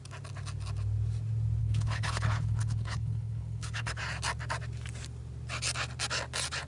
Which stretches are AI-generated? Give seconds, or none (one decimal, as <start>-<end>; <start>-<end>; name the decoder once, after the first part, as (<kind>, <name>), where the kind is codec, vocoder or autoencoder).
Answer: 1.6-4.0 (codec, HILCodec)